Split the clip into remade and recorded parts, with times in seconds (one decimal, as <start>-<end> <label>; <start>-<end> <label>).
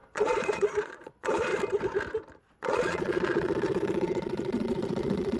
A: 0.0-1.5 remade; 1.5-2.4 recorded; 2.4-5.4 remade